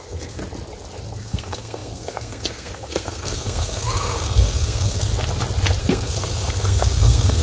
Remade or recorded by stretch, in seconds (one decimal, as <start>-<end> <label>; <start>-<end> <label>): 0.0-0.4 remade; 0.4-1.2 recorded; 1.2-5.1 remade; 5.1-5.8 recorded; 5.8-7.4 remade